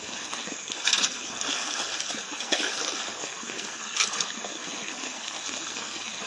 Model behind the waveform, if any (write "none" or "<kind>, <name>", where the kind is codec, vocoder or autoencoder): codec, SNAC